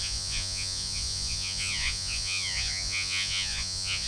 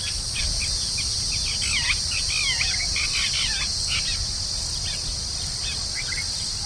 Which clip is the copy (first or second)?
first